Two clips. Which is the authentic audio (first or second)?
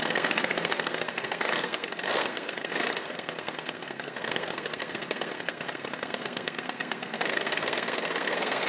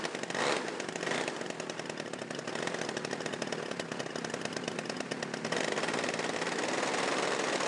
second